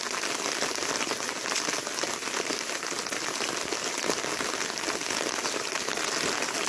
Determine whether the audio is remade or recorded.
recorded